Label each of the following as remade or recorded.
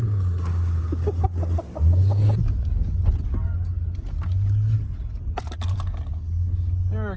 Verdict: recorded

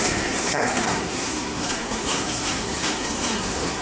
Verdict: remade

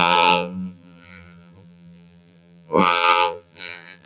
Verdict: remade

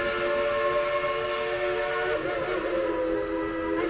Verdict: recorded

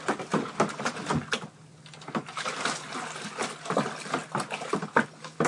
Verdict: recorded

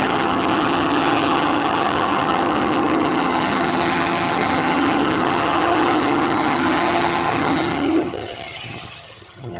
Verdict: remade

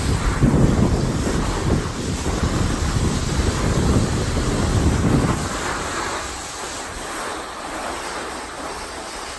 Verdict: recorded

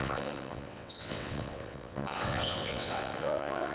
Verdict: remade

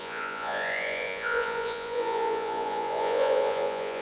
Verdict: remade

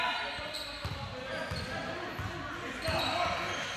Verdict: recorded